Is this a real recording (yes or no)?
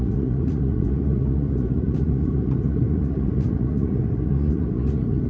no